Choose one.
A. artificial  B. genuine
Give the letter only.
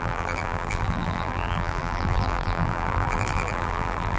A